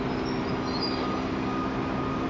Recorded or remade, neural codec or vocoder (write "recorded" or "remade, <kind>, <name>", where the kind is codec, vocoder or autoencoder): recorded